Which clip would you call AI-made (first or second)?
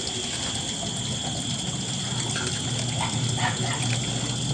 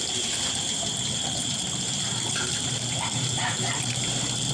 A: second